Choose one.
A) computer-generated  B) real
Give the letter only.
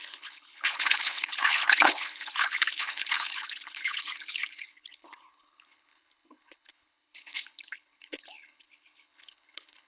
A